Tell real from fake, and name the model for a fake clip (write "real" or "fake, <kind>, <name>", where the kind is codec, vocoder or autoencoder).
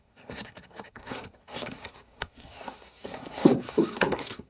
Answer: fake, codec, SNAC